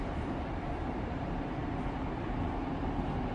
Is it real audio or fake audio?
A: fake